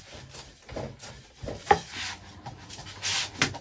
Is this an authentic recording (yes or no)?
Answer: yes